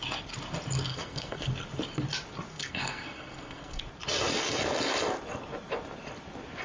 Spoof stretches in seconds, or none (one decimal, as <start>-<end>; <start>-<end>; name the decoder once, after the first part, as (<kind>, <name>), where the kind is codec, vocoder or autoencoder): 0.9-1.5 (codec, SNAC); 2.5-3.8